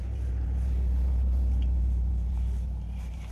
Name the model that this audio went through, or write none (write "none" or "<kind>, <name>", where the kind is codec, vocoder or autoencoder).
none